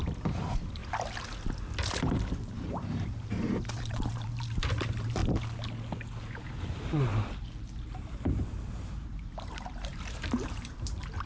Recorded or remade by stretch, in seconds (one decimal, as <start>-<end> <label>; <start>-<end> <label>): 0.0-0.8 remade; 0.8-2.0 recorded; 2.0-5.2 remade; 5.2-6.2 recorded; 6.2-11.3 remade